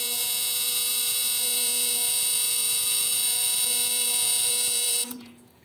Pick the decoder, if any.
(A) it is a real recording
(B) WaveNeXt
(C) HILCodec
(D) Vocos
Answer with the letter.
D